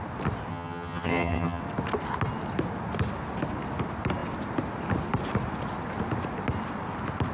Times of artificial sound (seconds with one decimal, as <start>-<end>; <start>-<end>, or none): 0.5-1.6